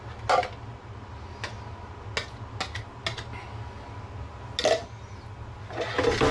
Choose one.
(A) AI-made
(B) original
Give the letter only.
B